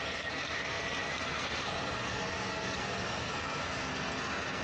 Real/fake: fake